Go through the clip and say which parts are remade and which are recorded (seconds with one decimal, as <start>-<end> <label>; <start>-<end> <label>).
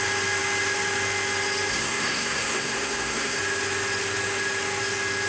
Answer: 0.0-1.7 recorded; 1.7-3.4 remade; 3.4-5.3 recorded